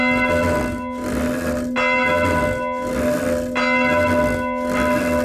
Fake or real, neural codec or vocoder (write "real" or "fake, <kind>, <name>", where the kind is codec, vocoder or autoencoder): real